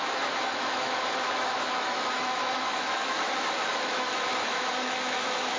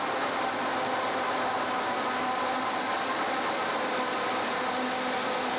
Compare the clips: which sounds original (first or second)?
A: second